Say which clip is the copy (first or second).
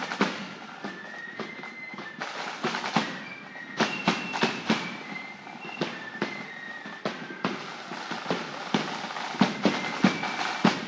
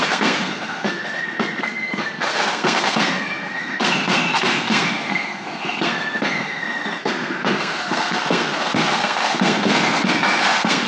second